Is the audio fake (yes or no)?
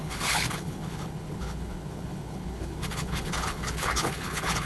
yes